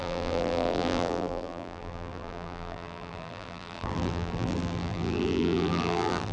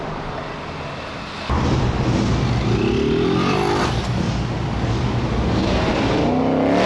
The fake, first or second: first